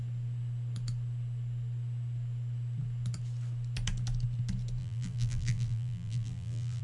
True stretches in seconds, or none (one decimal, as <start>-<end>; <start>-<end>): 0.0-4.8